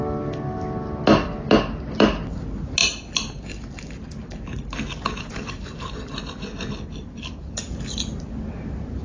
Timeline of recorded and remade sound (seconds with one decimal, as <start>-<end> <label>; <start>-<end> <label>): 0.0-2.8 recorded; 2.8-7.7 remade; 7.7-9.0 recorded